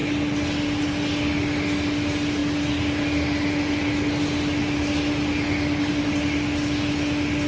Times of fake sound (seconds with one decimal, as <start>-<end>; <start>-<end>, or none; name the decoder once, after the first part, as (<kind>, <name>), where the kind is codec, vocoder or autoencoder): none